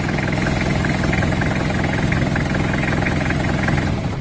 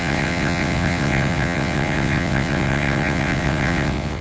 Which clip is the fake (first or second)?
second